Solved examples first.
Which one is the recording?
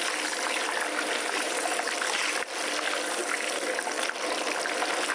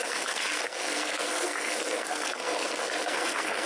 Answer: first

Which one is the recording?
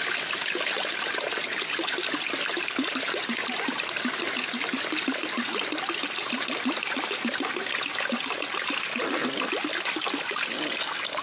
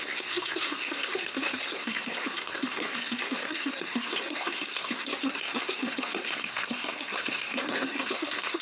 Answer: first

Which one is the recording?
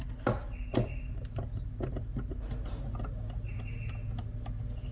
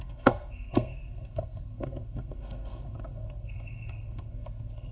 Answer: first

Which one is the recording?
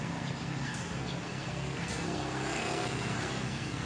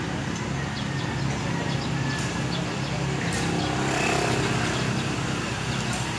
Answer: second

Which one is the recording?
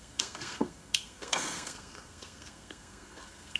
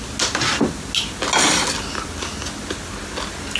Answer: second